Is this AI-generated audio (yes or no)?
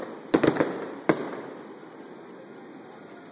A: no